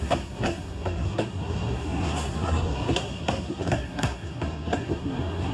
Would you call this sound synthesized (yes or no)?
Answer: yes